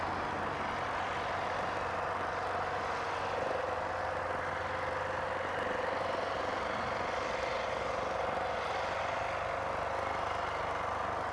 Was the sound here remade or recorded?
recorded